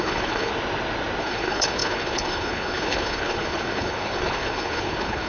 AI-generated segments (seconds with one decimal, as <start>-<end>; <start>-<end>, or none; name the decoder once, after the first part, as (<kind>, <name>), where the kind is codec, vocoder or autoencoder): 0.0-0.5 (codec, HILCodec); 1.2-5.3